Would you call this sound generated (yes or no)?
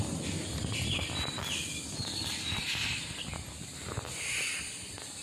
yes